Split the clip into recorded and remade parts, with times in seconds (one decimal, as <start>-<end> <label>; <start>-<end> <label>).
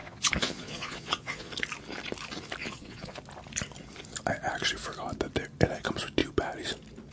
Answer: 0.0-1.5 remade; 1.5-2.6 recorded; 2.6-3.2 remade; 3.2-7.1 recorded